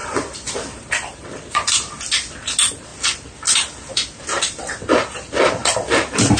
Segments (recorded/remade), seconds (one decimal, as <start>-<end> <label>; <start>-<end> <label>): 0.0-1.9 remade; 1.9-5.6 recorded; 5.6-6.4 remade